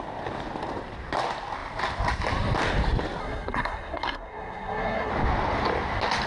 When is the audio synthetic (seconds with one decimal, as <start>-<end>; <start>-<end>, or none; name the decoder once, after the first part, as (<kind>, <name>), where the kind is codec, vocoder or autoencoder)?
3.2-5.1 (codec, SNAC)